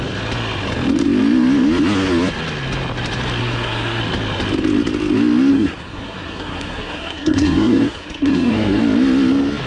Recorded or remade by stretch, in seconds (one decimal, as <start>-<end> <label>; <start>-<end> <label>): 0.0-3.4 recorded; 3.4-4.0 remade; 4.0-5.5 recorded; 5.5-8.8 remade; 8.8-9.7 recorded